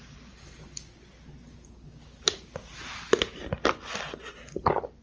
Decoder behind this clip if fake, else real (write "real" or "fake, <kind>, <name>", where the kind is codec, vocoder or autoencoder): real